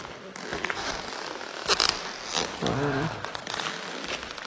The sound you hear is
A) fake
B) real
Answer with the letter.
B